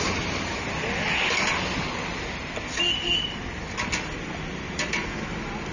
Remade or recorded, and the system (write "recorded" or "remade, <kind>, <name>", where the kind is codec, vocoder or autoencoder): recorded